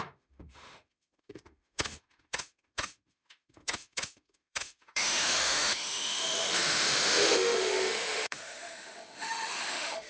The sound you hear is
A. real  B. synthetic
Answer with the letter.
B